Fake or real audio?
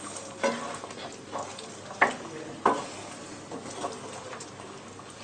real